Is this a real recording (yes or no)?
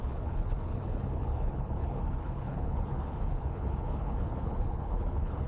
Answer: no